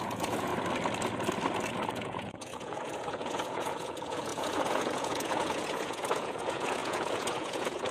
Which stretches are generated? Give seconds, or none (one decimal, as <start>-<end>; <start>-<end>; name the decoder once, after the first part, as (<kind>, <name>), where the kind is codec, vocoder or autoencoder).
0.0-0.5 (vocoder, Vocos); 1.9-7.9